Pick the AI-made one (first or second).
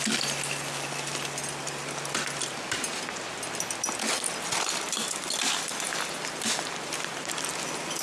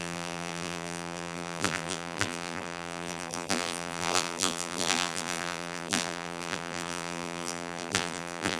second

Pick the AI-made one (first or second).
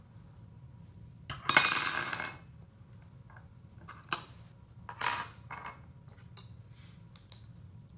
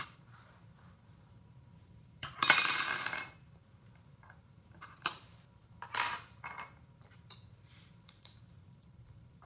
second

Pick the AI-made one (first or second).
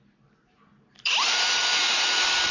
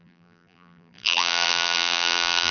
second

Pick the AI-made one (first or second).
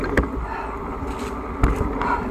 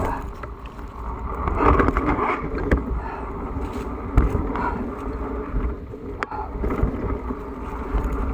second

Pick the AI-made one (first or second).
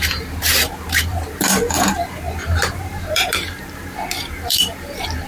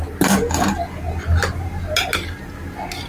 first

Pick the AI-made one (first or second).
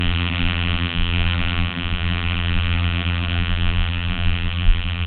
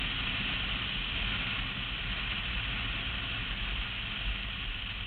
first